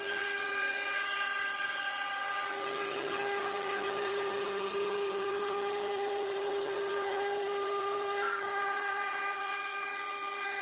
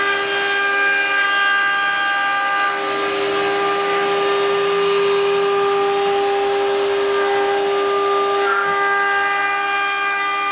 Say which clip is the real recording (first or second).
second